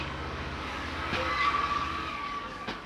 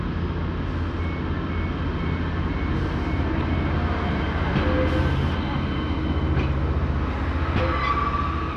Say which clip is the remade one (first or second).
first